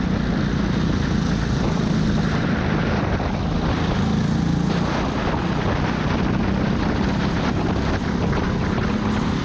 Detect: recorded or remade recorded